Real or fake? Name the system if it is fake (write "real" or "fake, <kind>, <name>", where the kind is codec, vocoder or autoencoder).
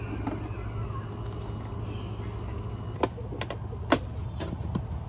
real